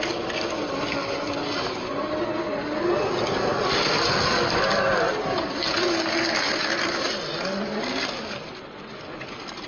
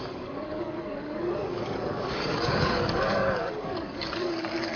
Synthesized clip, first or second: second